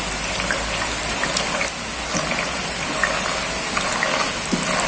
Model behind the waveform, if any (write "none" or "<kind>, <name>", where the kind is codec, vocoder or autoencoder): none